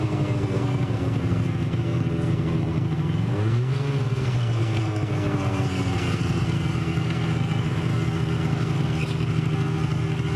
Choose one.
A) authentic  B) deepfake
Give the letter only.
B